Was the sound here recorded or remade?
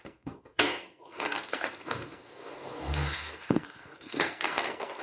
remade